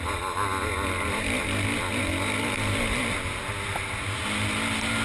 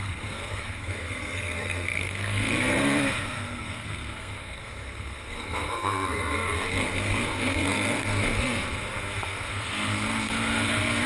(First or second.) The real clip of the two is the first